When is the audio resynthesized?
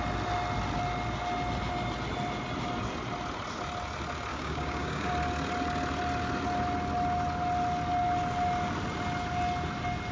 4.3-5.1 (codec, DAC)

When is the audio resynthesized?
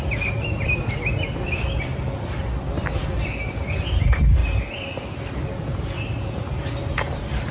none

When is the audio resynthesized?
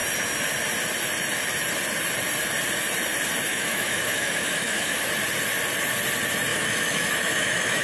3.5-5.1 (autoencoder, DAC-VAE); 6.5-7.8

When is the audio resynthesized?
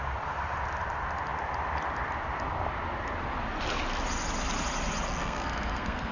5.2-6.1 (codec, SNAC)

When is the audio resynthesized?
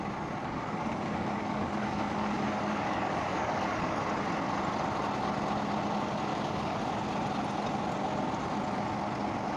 0.4-4.0 (codec, DAC); 6.3-6.8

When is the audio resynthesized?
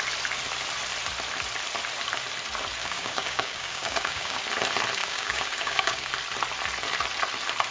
2.8-4.4 (codec, DAC); 5.0-6.1